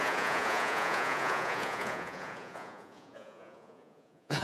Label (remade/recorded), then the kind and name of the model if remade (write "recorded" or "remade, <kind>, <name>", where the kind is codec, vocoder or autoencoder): remade, vocoder, Vocos